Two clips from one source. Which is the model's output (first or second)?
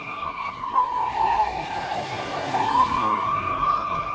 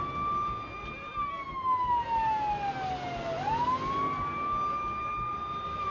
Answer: first